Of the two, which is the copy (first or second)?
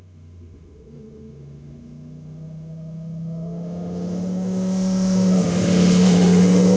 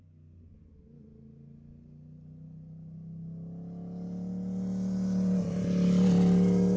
first